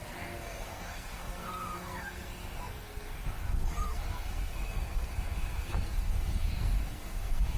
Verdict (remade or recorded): remade